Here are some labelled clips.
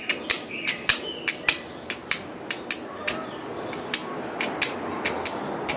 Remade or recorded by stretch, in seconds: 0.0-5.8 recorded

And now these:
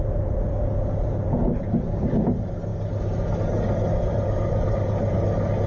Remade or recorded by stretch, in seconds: 0.0-5.7 recorded

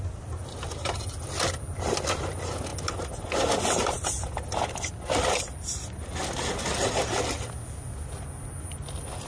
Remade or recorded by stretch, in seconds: 0.0-9.3 recorded

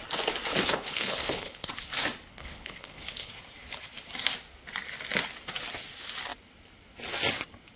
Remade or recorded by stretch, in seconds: 0.0-0.5 recorded; 0.5-1.7 remade; 1.7-2.3 recorded; 2.3-3.3 remade; 3.3-7.8 recorded

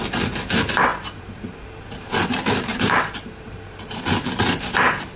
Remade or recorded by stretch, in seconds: 0.0-0.9 recorded; 0.9-4.0 remade; 4.0-5.2 recorded